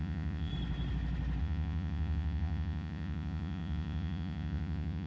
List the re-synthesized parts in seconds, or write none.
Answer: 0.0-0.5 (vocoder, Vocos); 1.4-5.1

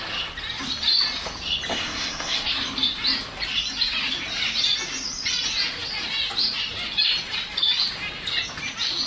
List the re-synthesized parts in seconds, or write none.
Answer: 1.7-2.5 (codec, SNAC)

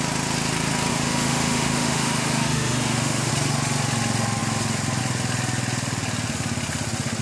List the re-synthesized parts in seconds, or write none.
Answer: 0.9-3.3 (autoencoder, DAC-VAE)

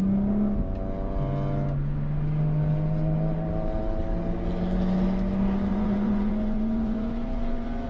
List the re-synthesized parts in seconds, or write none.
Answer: 5.7-7.9 (vocoder, Vocos)

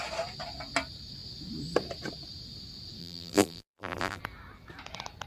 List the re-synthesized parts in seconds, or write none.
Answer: 3.0-4.2 (vocoder, BigVGAN v2)

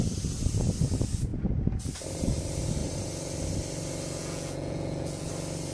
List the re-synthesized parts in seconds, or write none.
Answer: 4.2-5.3 (vocoder, Vocos)

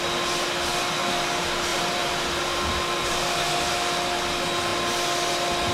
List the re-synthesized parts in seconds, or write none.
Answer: 1.7-3.6 (vocoder, BigVGAN v2)

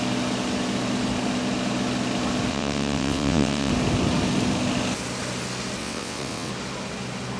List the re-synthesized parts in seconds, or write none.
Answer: 2.5-3.7 (vocoder, WaveNeXt); 5.8-6.5